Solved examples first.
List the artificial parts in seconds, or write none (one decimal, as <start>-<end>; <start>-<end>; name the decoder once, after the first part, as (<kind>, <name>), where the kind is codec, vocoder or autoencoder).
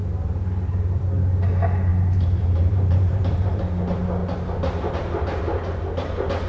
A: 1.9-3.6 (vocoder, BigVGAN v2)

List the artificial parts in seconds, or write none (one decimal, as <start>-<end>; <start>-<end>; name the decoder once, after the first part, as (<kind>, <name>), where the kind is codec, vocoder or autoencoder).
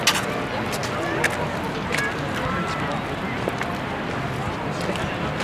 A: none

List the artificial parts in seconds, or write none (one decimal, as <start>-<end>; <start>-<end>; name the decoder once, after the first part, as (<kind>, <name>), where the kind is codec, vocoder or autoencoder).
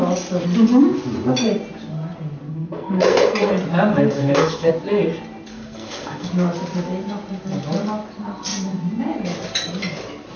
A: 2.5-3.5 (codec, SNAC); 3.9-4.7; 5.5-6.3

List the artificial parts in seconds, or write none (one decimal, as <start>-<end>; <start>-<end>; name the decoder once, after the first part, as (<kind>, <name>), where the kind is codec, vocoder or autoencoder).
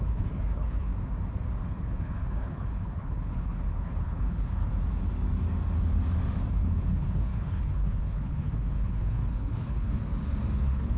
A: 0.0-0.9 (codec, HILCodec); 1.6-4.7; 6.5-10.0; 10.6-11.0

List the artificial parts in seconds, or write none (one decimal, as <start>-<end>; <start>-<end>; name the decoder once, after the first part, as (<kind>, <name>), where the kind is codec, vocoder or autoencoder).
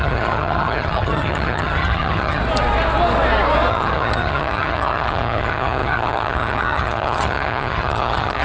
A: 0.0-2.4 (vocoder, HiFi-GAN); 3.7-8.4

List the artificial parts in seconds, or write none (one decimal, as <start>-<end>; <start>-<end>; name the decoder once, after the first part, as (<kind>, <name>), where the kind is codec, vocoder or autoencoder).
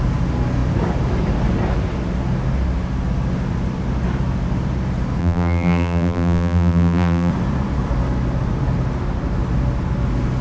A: 5.2-7.3 (vocoder, BigVGAN v2)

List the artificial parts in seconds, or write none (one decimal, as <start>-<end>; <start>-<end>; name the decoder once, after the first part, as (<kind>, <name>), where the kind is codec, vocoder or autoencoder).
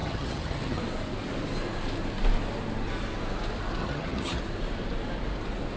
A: 0.0-0.8 (vocoder, HiFi-GAN); 3.8-4.4